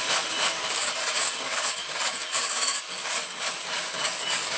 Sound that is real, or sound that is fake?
fake